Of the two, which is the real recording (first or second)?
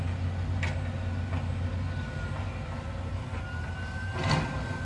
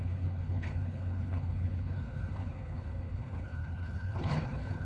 first